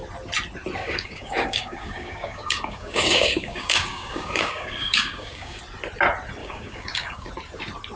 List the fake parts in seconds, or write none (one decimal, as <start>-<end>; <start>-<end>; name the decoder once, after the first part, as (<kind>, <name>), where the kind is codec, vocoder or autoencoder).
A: 0.8-5.6 (codec, DAC); 6.4-7.3